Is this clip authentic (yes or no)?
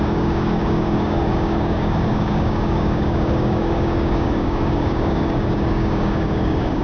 no